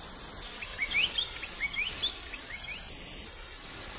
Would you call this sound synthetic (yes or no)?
no